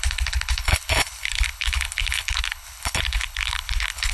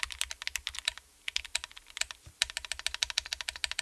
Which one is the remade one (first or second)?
first